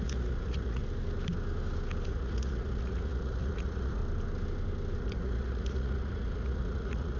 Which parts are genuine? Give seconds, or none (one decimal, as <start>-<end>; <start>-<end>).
0.8-2.1; 4.0-5.0